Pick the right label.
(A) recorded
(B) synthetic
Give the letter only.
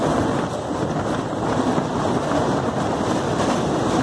A